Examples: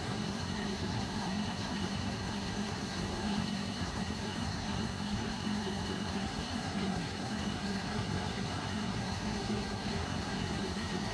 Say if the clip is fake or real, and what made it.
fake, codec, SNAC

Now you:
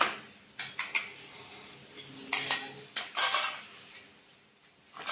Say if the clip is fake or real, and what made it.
real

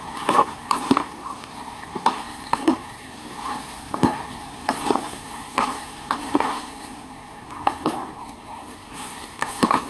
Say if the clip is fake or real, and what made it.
fake, codec, SNAC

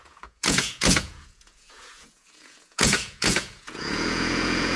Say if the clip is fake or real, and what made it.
fake, vocoder, Vocos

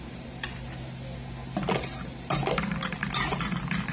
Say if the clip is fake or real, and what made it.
real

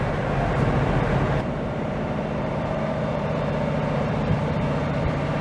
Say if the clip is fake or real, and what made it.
fake, vocoder, BigVGAN v2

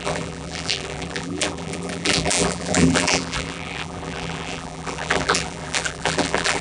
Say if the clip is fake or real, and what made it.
fake, vocoder, BigVGAN v2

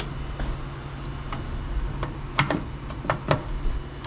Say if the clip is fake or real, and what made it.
real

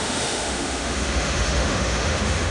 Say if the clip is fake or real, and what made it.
fake, autoencoder, DAC-VAE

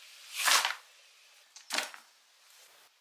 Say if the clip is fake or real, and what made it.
real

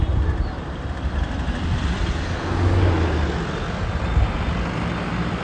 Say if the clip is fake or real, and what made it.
real